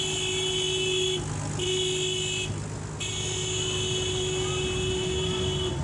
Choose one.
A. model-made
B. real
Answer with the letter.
B